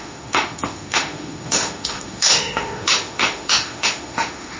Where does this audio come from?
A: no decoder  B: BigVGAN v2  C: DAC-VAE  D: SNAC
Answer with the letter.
C